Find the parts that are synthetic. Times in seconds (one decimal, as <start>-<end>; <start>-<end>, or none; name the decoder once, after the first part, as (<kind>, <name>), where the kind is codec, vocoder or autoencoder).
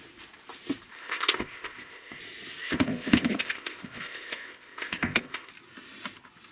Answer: 0.9-2.2 (codec, ZipCodec); 2.6-5.5